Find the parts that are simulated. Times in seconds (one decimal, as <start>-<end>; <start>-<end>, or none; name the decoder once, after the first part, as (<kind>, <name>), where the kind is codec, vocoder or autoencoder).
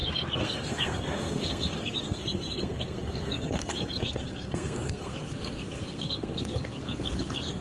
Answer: 0.0-7.6 (codec, SNAC)